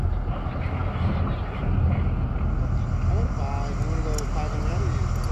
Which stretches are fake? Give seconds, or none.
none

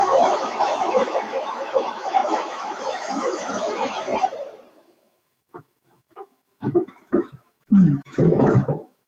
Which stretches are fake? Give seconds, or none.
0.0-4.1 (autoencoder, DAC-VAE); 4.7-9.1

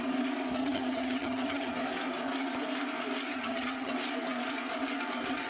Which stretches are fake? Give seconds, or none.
0.6-1.7 (vocoder, HiFi-GAN); 3.3-3.9

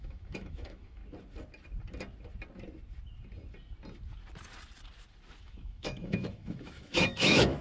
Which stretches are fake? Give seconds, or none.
0.0-1.0 (autoencoder, DAC-VAE); 5.4-7.6